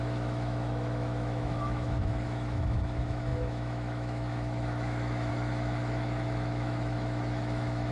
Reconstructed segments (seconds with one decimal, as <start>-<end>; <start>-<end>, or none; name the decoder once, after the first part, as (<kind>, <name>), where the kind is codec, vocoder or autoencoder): 0.0-7.9 (autoencoder, DAC-VAE)